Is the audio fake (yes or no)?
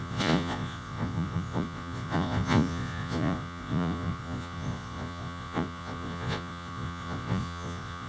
yes